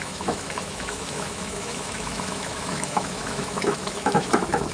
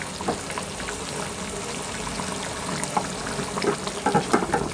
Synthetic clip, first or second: first